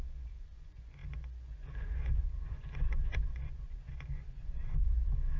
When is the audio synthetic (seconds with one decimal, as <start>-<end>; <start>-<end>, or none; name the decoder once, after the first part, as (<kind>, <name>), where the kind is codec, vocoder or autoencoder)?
0.0-5.4 (vocoder, Vocos)